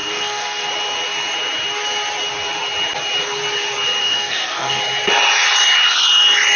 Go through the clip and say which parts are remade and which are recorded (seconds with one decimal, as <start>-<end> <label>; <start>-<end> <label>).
0.0-0.7 remade; 0.7-4.0 recorded; 4.0-4.8 remade; 4.8-6.6 recorded